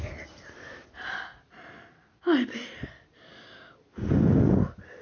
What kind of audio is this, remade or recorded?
recorded